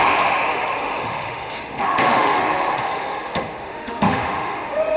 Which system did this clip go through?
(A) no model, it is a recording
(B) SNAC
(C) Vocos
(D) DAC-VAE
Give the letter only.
D